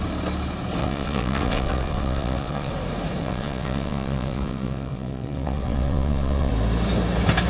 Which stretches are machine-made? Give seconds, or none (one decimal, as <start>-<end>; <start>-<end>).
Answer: 0.8-2.7; 3.2-6.5